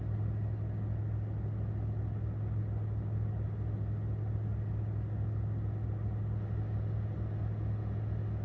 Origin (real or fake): real